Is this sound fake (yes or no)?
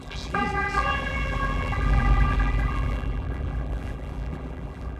yes